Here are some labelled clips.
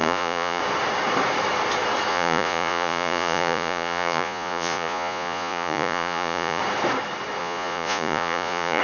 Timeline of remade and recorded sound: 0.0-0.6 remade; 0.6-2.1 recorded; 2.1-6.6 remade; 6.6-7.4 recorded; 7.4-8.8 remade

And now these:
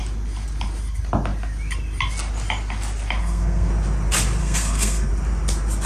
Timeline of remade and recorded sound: 0.0-3.2 recorded; 3.2-3.7 remade; 3.7-4.4 recorded; 4.4-5.1 remade; 5.1-5.9 recorded

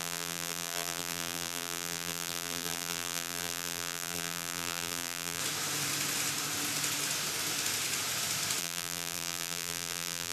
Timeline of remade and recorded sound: 0.0-5.4 remade; 5.4-8.6 recorded; 8.6-10.3 remade